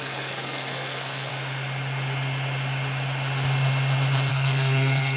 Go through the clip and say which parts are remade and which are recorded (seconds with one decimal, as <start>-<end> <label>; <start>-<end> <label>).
0.0-1.3 remade; 1.3-4.3 recorded; 4.3-5.2 remade